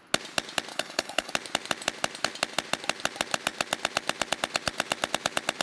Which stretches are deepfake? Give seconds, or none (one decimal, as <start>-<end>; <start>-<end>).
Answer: 0.7-1.3